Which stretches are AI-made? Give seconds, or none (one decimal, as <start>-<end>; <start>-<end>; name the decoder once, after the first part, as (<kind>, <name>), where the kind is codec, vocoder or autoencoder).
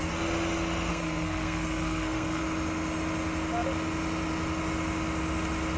0.9-2.4 (codec, SNAC)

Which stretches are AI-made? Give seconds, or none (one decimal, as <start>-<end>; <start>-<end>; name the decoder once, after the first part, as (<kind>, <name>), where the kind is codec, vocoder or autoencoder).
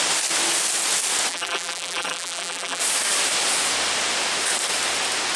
1.3-2.8 (vocoder, BigVGAN v2)